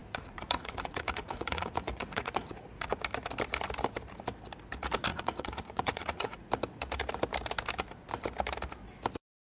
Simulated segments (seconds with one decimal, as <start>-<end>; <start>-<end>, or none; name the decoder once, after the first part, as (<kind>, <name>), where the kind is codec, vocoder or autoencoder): 0.0-2.9 (vocoder, Vocos); 5.1-6.5